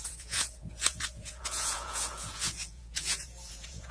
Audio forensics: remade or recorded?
remade